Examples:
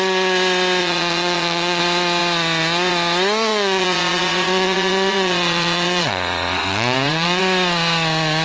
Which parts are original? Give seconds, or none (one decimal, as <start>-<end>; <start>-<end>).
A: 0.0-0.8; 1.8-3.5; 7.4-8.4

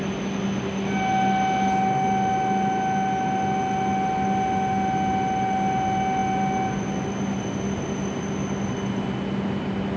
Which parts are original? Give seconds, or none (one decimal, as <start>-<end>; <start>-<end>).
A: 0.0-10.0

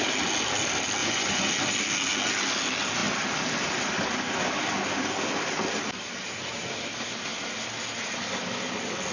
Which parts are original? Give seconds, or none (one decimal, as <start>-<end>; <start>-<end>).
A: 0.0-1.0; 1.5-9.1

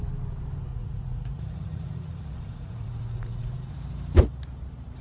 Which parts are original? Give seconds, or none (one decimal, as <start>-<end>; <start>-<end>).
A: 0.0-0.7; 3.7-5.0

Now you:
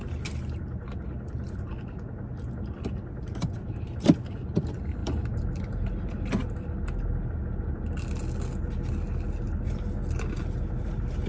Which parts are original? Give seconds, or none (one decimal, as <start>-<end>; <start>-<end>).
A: 0.0-11.3

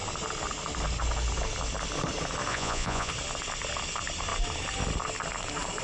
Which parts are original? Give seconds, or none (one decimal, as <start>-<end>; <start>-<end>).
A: 0.0-2.5; 3.1-5.8